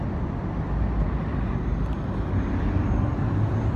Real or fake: real